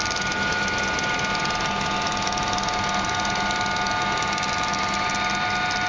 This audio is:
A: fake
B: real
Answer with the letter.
B